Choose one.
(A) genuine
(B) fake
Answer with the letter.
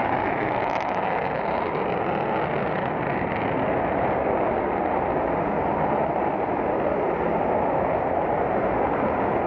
A